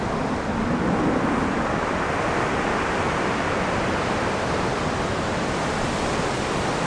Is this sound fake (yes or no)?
no